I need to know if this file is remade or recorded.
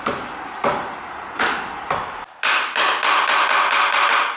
recorded